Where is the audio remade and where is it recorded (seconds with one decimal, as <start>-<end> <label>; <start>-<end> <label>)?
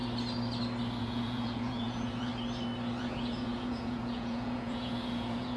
0.0-1.0 recorded; 1.0-2.3 remade; 2.3-3.0 recorded; 3.0-5.6 remade